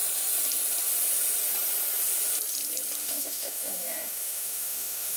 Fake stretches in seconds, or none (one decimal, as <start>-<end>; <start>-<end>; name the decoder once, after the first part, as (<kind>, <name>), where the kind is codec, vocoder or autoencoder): 3.0-5.2 (autoencoder, DAC-VAE)